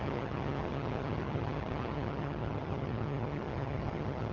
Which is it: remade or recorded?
remade